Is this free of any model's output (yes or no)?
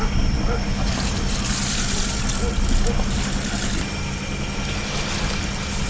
yes